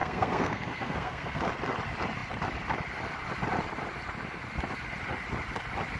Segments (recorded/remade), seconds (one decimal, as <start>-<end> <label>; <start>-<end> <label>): 0.0-1.4 remade; 1.4-6.0 recorded